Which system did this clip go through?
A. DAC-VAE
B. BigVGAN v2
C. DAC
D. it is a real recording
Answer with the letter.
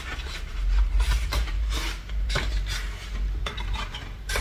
B